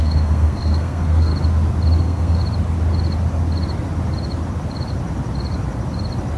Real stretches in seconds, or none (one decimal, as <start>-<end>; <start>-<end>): 1.3-2.0; 2.4-6.4